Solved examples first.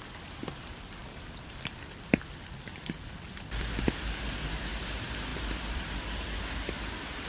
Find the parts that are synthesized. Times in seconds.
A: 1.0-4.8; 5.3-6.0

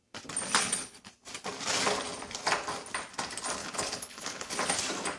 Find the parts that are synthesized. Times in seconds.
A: 0.6-1.1; 3.6-4.7

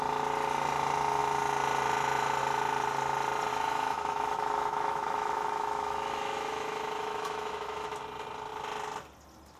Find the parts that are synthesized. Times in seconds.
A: 3.5-8.0

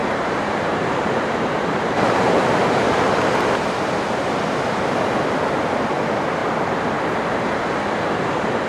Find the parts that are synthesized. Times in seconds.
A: 0.0-3.1

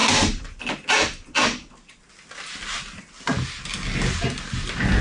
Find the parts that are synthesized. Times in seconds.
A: none